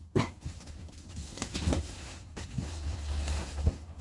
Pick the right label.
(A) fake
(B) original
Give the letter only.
A